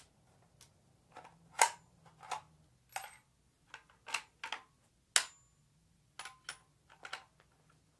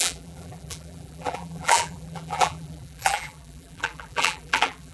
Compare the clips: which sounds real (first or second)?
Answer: first